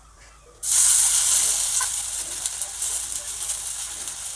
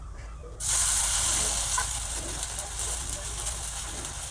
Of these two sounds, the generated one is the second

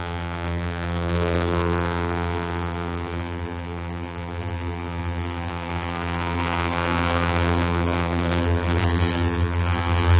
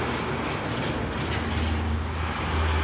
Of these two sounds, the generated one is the first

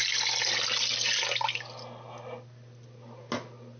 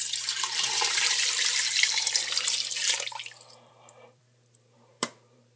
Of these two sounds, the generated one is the second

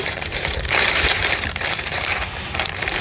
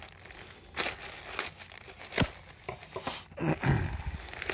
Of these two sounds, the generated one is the first